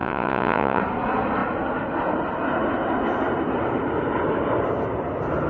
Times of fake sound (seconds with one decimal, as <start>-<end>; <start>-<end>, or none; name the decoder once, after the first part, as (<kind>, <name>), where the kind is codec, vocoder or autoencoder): 0.0-0.8 (vocoder, Vocos)